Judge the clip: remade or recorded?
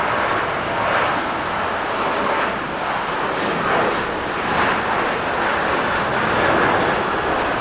recorded